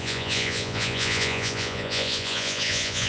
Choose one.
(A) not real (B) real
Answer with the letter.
A